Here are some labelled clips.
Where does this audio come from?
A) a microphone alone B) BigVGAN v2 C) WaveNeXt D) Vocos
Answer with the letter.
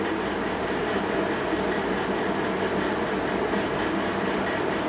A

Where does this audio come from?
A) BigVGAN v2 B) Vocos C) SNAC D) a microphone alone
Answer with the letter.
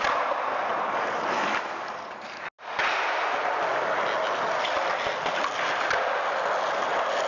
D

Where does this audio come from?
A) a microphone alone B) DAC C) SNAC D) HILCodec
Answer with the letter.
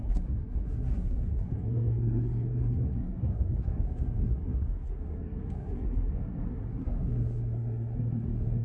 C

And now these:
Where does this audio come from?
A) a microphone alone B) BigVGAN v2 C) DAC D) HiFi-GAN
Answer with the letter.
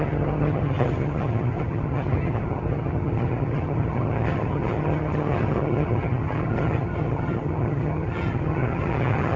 D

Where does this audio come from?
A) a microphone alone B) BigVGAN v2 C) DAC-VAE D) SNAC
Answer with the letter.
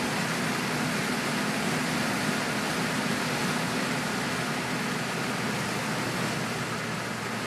A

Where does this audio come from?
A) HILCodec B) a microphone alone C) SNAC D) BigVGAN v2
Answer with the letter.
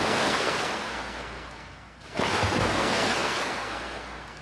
C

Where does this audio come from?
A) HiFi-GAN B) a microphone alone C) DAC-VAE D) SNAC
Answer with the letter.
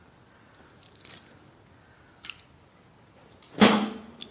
B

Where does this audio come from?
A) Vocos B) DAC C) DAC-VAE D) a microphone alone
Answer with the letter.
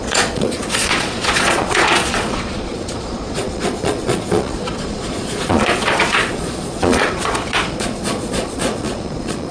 A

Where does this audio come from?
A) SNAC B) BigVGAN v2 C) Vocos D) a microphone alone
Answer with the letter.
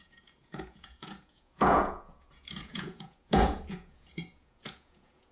C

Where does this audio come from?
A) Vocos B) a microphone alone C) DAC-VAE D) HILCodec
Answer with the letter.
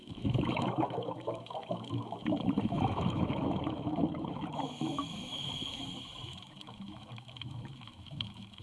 C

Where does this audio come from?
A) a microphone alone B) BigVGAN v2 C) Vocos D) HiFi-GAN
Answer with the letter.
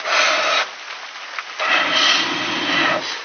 A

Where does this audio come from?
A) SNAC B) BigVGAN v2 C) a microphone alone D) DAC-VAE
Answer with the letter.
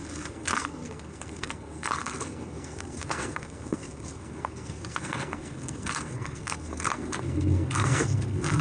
A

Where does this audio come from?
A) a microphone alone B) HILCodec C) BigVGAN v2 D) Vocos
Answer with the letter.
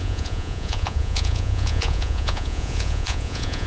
D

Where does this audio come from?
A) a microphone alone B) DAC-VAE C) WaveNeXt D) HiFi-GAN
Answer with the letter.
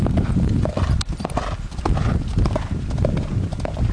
A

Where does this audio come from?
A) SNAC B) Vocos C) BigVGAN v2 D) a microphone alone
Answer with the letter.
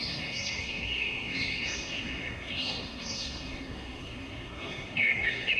A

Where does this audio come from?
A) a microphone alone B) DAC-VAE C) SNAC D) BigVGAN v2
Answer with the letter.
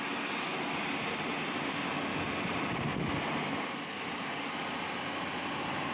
A